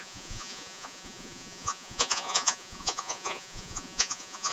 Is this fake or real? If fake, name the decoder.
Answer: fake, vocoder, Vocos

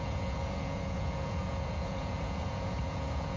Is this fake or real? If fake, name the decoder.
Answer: fake, vocoder, Vocos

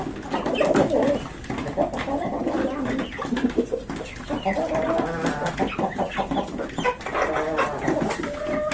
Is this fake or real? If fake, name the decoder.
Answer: real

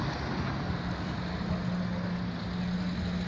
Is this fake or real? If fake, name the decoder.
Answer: real